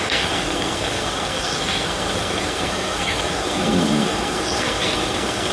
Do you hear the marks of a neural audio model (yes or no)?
yes